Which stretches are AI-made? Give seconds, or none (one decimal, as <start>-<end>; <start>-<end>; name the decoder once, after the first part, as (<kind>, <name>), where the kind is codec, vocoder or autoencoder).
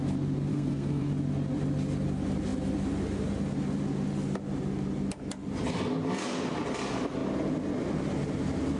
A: 0.5-1.0 (codec, SNAC)